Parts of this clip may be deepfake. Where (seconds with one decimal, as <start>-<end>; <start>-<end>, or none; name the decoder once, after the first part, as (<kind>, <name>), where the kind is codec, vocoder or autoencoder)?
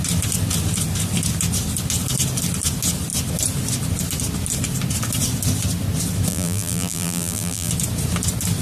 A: 6.3-7.7 (vocoder, BigVGAN v2)